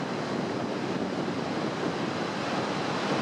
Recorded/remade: recorded